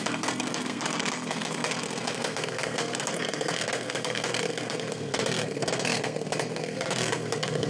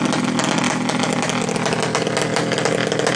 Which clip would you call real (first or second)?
second